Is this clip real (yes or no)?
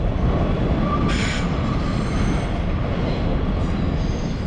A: yes